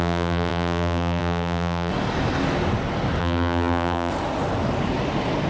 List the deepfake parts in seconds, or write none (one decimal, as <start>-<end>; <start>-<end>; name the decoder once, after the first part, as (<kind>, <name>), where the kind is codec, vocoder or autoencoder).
0.0-1.9 (vocoder, BigVGAN v2); 3.2-4.1

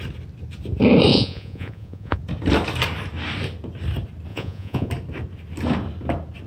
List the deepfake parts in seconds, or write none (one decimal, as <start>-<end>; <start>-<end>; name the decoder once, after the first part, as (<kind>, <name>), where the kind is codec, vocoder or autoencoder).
1.1-2.2 (vocoder, Vocos); 4.3-4.9

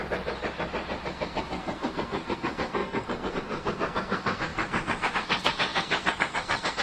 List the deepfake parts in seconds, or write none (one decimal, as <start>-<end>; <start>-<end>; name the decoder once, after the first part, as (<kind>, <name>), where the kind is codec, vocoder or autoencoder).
1.0-6.8 (codec, SNAC)